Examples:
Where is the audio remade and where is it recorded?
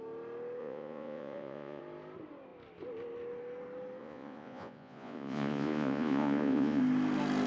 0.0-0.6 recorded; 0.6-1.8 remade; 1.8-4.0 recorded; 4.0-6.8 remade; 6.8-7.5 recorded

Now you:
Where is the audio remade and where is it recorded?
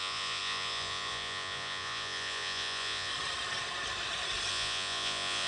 0.0-3.1 remade; 3.1-4.5 recorded; 4.5-5.5 remade